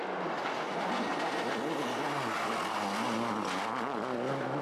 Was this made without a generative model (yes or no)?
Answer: yes